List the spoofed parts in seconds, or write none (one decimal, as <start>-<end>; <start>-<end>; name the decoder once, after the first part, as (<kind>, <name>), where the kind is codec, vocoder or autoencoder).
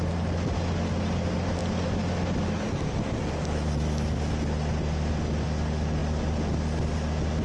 none